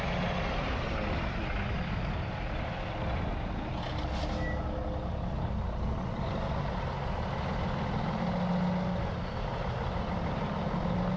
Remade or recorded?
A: recorded